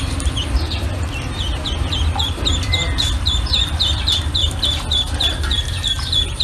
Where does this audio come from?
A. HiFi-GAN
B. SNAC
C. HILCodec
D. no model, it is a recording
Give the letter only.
D